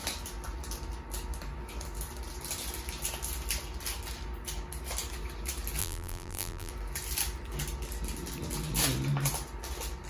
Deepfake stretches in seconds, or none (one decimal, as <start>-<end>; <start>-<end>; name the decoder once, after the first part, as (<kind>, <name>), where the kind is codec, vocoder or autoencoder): 5.8-6.7 (vocoder, BigVGAN v2)